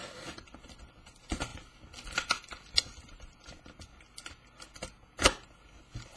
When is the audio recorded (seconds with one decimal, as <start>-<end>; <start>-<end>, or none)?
0.0-6.2